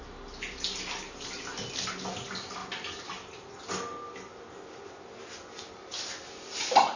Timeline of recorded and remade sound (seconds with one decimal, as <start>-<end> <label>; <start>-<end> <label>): 0.0-7.0 recorded